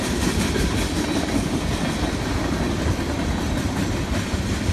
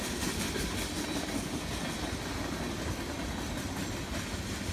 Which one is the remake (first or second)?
first